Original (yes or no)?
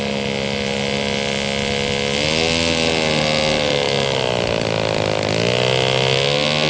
yes